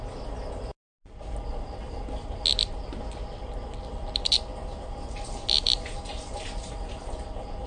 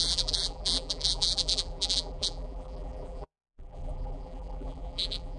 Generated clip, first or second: second